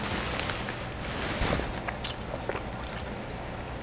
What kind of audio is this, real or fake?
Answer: real